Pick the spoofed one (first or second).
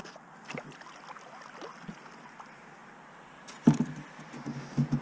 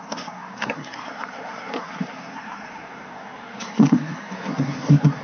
second